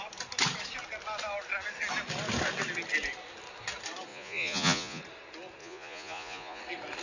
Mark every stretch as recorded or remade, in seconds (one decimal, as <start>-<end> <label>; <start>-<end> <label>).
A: 0.0-4.1 recorded; 4.1-5.0 remade; 5.0-5.6 recorded; 5.6-6.6 remade; 6.6-7.0 recorded